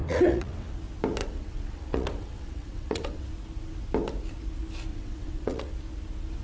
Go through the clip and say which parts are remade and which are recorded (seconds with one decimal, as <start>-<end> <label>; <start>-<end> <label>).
0.0-0.7 remade; 0.7-1.2 recorded; 1.2-3.3 remade; 3.3-4.9 recorded; 4.9-5.7 remade; 5.7-6.4 recorded